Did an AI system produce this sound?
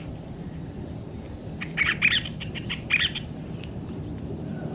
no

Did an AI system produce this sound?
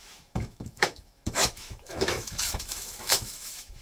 yes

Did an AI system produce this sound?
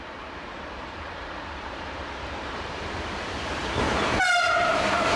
yes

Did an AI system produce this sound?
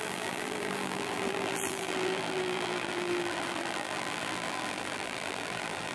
yes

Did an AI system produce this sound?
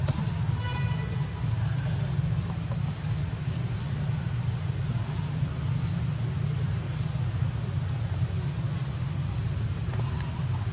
no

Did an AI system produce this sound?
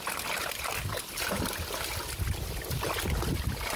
no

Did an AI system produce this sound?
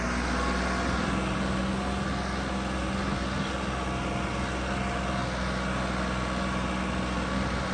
no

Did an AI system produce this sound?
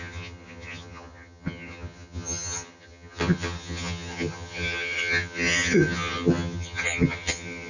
yes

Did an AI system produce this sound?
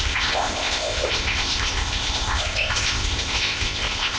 yes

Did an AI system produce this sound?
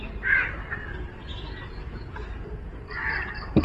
no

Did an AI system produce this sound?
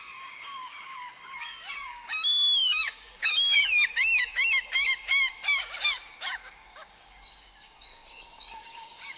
yes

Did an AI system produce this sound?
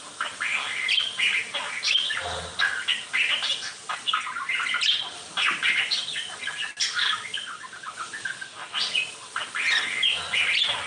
no